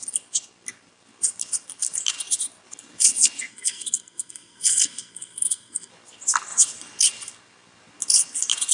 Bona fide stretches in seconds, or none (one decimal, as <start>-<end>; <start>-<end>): 0.0-3.5; 5.9-8.7